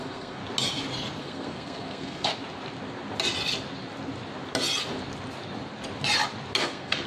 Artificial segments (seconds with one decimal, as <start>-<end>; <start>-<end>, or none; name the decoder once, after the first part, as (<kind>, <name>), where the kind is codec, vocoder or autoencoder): 0.0-0.4 (codec, SNAC); 1.2-2.3; 6.6-7.1